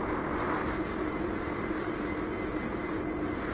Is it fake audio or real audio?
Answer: real